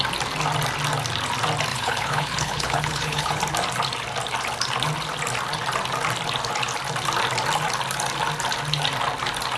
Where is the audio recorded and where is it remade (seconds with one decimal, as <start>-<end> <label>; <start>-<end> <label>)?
0.0-1.7 recorded; 1.7-3.4 remade; 3.4-9.6 recorded